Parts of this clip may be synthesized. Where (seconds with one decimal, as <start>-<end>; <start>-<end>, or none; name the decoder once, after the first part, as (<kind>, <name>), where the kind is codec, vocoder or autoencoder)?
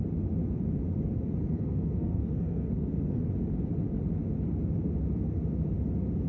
1.4-3.2 (codec, SNAC)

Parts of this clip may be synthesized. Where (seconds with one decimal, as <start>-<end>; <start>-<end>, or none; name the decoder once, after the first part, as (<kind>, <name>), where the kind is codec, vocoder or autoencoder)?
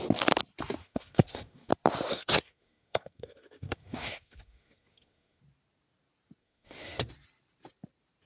0.8-1.7 (codec, SNAC); 2.1-5.4; 6.4-7.1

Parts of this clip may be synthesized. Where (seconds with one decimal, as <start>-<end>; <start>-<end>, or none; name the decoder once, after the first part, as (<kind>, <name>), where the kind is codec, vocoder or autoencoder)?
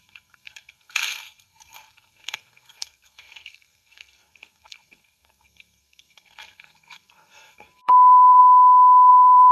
0.0-8.4 (codec, SNAC); 9.1-9.5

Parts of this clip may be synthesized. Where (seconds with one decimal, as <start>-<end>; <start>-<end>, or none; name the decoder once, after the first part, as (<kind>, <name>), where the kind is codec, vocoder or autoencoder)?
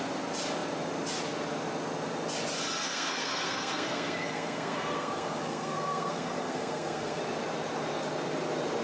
2.8-7.2 (codec, SNAC)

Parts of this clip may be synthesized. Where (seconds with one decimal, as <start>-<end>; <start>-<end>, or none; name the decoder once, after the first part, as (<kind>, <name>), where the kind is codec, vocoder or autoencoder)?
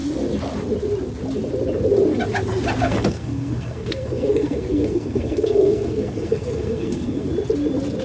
2.8-7.3 (codec, SNAC)